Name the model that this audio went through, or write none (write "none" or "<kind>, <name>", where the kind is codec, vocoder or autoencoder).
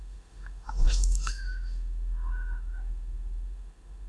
autoencoder, DAC-VAE